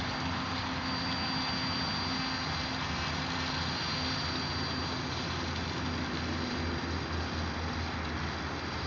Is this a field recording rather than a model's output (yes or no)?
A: yes